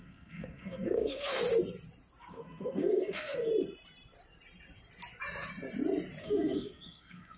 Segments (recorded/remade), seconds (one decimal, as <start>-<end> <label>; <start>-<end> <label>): 0.0-1.4 remade; 1.4-2.3 recorded; 2.3-3.5 remade; 3.5-6.2 recorded; 6.2-7.4 remade